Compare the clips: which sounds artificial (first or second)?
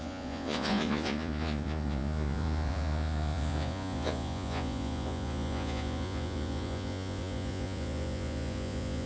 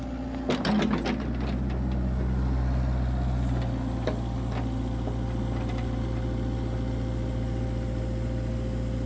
first